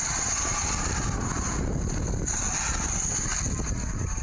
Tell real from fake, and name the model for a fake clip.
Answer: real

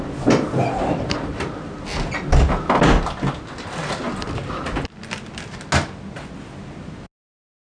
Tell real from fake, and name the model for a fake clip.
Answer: real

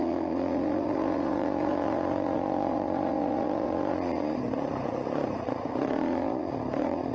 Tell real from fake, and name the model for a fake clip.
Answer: fake, vocoder, Vocos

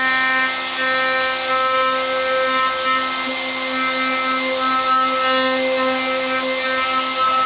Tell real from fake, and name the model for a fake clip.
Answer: real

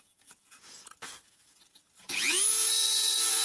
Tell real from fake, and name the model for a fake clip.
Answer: fake, vocoder, Vocos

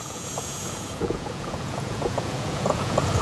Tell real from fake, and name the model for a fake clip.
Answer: fake, vocoder, Vocos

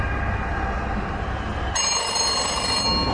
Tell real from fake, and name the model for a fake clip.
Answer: real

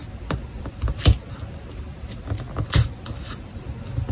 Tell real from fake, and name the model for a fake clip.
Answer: real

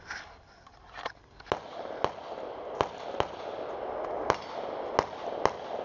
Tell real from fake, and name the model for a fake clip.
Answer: real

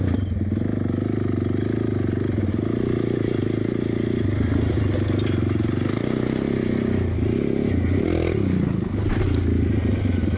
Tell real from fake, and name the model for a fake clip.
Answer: real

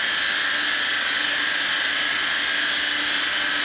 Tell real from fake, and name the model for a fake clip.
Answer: real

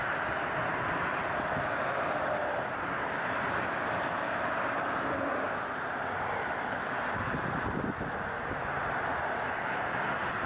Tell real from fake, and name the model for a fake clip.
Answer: real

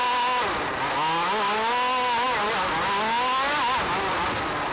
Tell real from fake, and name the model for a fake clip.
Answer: real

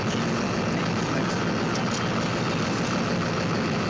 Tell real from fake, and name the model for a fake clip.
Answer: real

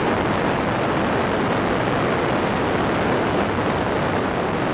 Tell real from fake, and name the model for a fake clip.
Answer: real